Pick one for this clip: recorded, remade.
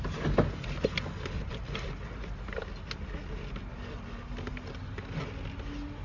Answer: recorded